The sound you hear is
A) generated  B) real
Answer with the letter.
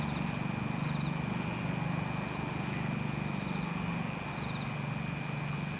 B